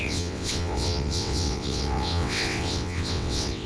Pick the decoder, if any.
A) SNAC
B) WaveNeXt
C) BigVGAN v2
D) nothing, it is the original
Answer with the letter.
B